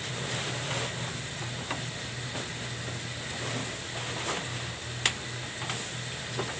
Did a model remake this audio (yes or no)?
no